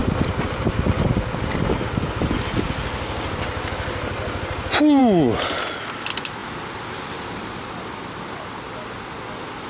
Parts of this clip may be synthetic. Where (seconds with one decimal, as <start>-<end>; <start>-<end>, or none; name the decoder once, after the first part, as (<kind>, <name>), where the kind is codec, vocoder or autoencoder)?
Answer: none